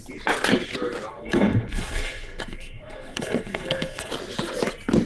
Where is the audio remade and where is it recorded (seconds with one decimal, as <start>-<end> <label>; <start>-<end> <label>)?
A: 0.0-1.1 recorded; 1.1-4.1 remade; 4.1-5.0 recorded